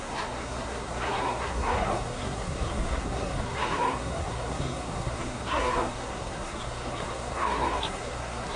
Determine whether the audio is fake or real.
fake